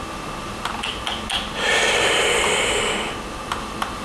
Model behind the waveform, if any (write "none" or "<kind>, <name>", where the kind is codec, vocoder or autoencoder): none